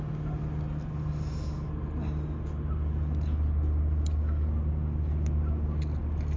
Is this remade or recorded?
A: recorded